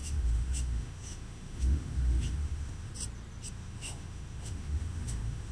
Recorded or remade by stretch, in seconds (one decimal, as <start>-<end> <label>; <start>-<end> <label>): 0.0-2.9 remade; 2.9-3.5 recorded; 3.5-5.5 remade